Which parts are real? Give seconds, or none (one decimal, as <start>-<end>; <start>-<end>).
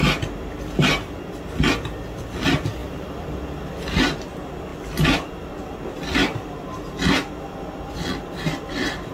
0.0-2.8; 4.0-9.1